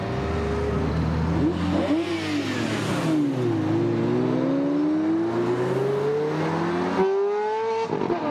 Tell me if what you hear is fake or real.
real